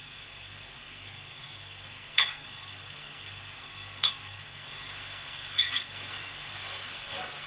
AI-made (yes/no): yes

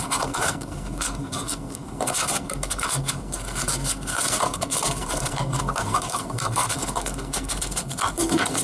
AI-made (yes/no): yes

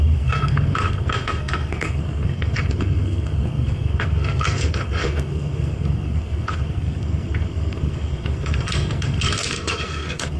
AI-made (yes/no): yes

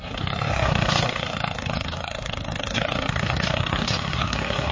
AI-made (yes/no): yes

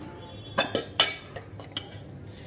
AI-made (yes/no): no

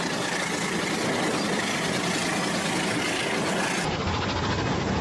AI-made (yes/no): no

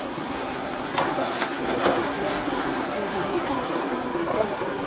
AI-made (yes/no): yes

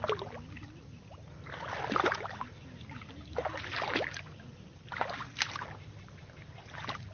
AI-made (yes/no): no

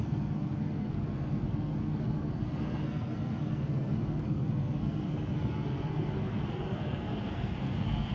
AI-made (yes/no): yes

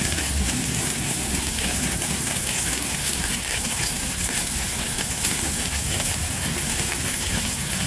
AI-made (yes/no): yes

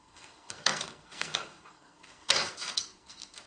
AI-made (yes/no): yes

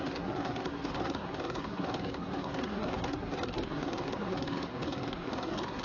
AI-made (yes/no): yes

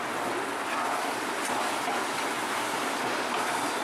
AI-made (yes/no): no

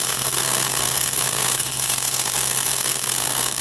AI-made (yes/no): yes